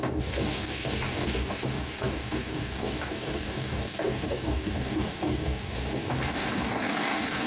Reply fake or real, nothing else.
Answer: fake